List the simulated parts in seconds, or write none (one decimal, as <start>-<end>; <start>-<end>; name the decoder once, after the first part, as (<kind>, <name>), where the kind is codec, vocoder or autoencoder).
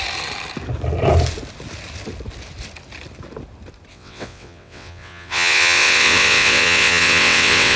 3.9-7.8 (vocoder, WaveNeXt)